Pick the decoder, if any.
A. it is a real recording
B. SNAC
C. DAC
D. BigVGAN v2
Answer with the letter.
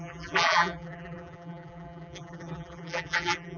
D